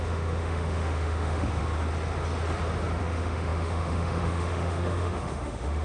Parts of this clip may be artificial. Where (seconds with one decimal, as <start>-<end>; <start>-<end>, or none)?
0.0-1.6; 3.0-5.8